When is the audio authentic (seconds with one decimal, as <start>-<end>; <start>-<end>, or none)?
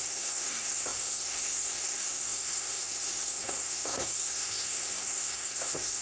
none